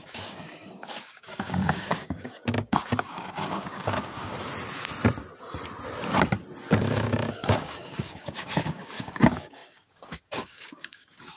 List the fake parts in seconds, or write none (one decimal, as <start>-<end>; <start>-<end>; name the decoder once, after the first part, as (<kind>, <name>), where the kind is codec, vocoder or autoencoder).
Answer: 0.0-4.3 (codec, DAC); 6.8-11.4